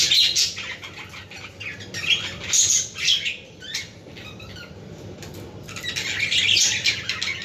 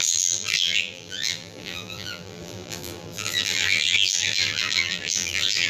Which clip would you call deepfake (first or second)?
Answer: second